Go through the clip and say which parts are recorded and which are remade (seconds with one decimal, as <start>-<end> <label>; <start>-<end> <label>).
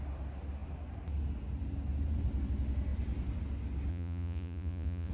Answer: 0.0-3.9 recorded; 3.9-5.1 remade